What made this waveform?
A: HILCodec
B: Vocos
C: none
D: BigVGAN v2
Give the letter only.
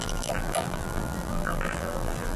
D